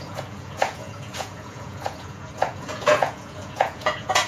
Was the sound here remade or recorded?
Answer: remade